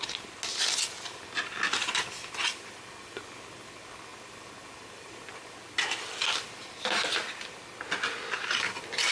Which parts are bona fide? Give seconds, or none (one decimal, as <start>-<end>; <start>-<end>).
0.0-9.1